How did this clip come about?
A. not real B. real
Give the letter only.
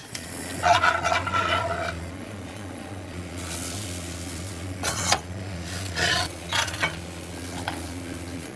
A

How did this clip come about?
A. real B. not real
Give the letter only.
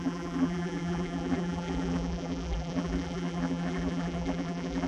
B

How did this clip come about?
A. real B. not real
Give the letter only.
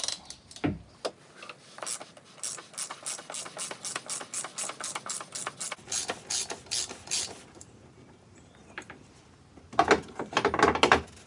A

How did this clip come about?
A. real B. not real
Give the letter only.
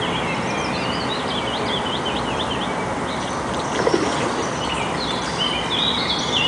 A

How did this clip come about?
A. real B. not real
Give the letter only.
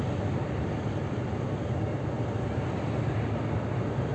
A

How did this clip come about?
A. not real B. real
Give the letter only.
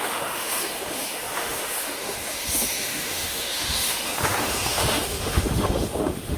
A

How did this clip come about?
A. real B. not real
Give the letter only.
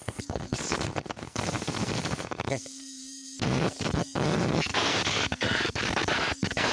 B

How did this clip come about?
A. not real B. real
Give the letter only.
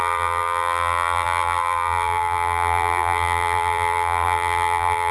A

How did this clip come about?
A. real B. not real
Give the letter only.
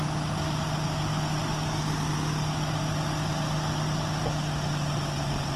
A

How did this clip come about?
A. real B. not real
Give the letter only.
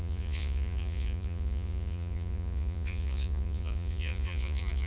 B